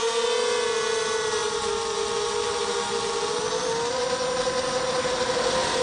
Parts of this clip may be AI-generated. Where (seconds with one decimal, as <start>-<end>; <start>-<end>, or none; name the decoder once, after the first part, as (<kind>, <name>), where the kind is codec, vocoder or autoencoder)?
none